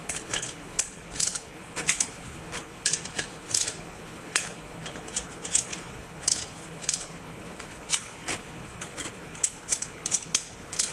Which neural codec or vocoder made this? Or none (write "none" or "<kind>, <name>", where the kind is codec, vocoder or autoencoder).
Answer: codec, HILCodec